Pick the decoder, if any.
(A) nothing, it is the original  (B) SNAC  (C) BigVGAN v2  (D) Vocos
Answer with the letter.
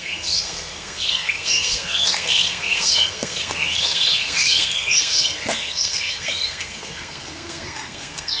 B